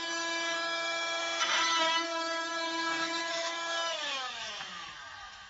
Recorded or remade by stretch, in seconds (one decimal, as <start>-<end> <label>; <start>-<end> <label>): 0.0-1.2 remade; 1.2-1.8 recorded; 1.8-5.5 remade